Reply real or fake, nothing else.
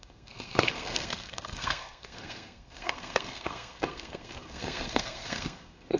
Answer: fake